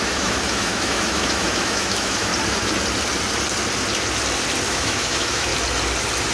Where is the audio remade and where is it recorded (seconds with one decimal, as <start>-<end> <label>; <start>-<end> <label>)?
0.0-2.3 remade; 2.3-4.7 recorded; 4.7-5.5 remade; 5.5-6.3 recorded